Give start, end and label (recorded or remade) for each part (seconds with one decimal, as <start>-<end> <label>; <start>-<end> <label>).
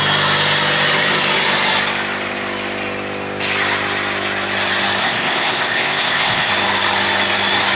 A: 0.0-5.0 recorded; 5.0-6.5 remade; 6.5-7.7 recorded